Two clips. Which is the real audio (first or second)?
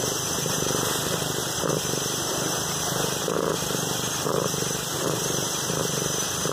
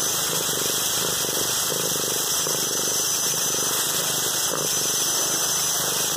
second